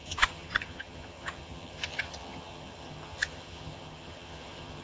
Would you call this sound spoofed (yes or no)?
yes